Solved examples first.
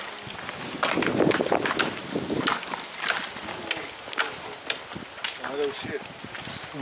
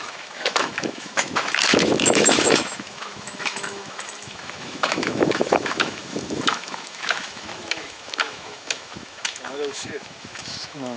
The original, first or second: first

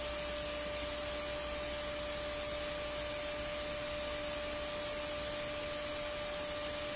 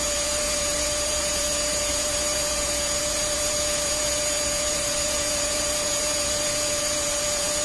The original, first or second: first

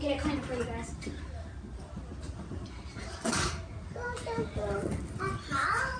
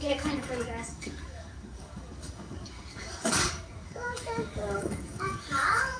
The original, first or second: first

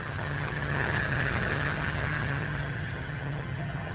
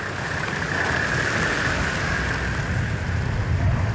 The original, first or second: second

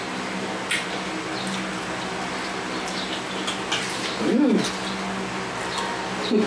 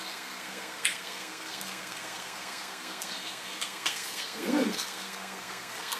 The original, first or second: first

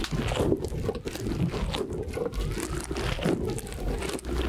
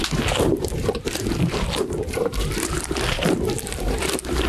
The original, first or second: first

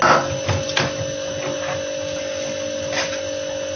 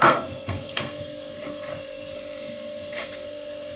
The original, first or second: first